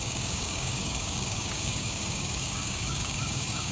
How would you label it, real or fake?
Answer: fake